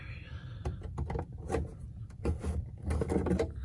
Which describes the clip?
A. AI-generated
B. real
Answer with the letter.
B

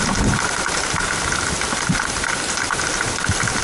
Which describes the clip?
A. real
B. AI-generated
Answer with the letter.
A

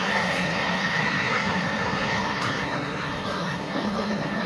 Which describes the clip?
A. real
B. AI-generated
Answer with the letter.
B